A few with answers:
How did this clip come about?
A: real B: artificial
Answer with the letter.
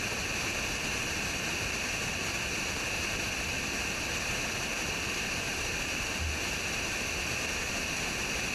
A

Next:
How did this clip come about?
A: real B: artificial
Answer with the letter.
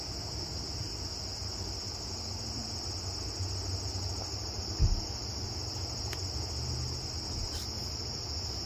A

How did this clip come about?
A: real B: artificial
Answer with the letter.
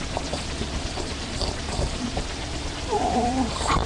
B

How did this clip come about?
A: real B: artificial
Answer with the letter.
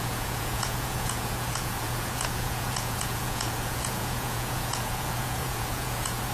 B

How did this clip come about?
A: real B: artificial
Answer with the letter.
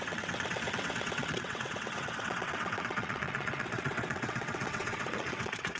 B